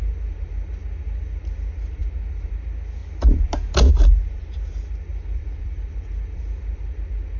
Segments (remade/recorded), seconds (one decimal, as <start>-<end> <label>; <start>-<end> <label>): 0.0-5.1 recorded; 5.1-6.8 remade; 6.8-7.4 recorded